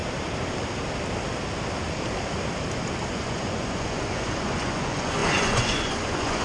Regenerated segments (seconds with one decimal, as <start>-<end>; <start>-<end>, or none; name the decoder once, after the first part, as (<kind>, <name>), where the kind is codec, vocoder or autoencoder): 3.1-6.4 (vocoder, Vocos)